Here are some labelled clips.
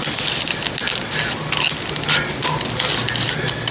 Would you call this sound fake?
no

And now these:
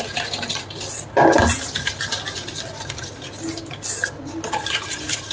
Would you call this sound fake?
no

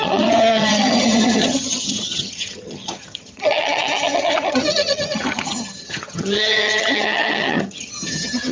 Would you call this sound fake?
yes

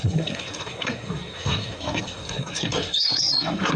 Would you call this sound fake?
yes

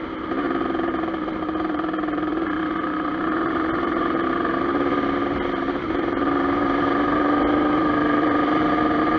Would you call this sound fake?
yes